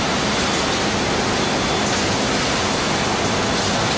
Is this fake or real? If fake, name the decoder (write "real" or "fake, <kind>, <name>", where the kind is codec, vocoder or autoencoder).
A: real